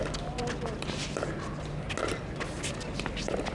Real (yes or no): yes